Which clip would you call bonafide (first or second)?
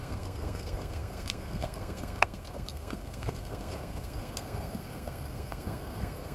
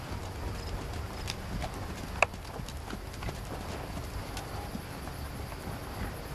second